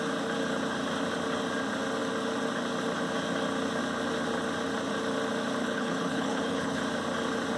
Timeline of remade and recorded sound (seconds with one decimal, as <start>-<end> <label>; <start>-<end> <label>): 0.0-5.6 recorded; 5.6-6.8 remade; 6.8-7.6 recorded